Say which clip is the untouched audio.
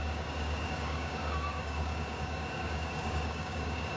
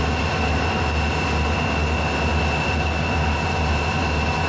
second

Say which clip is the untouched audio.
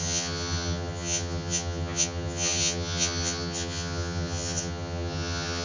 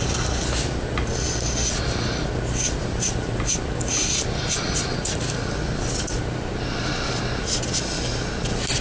second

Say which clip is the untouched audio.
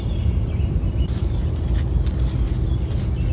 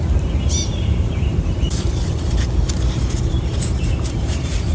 first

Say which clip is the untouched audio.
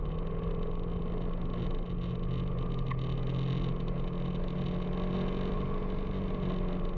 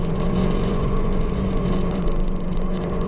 first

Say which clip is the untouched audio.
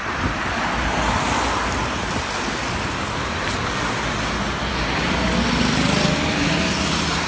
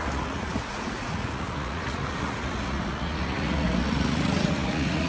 first